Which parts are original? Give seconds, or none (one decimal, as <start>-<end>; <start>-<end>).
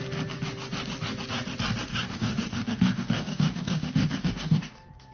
0.0-1.9